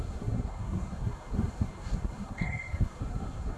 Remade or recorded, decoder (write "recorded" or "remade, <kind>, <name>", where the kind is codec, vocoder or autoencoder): remade, codec, SNAC